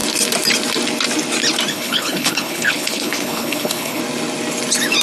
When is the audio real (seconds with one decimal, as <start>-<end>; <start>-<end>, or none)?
0.0-1.7; 4.0-5.0